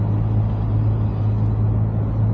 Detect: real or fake real